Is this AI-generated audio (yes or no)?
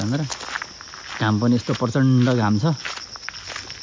no